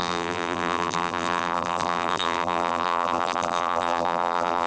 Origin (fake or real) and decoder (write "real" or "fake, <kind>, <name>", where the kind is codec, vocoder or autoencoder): fake, vocoder, BigVGAN v2